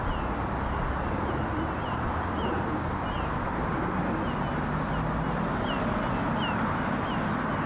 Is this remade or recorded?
recorded